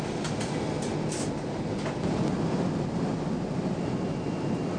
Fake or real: real